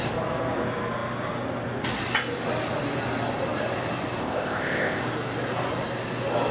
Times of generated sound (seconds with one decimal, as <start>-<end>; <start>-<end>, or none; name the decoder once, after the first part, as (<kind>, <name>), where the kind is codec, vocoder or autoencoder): 4.2-5.0 (codec, ZipCodec)